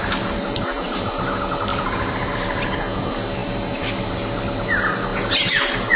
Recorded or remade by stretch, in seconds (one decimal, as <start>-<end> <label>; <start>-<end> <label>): 0.0-6.0 recorded